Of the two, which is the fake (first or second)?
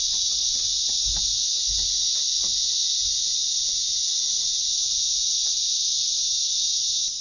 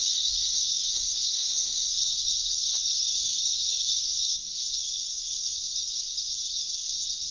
second